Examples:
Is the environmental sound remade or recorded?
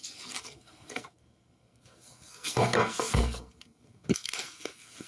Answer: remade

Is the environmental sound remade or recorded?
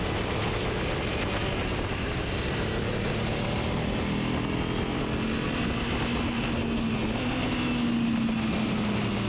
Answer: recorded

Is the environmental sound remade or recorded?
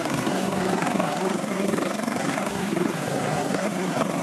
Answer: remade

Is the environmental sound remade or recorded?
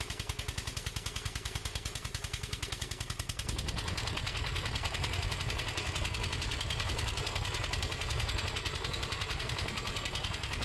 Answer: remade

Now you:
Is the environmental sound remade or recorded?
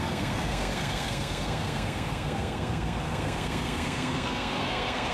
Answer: remade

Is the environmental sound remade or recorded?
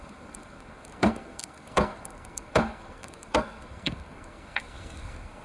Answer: remade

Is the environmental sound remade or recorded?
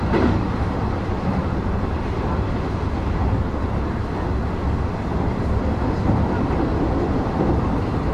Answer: recorded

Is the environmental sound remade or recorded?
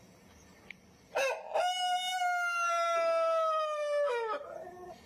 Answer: recorded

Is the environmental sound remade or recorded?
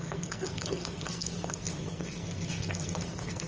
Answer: remade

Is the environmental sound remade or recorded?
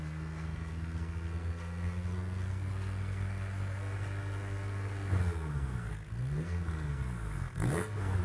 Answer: remade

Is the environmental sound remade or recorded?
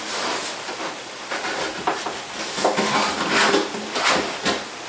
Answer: recorded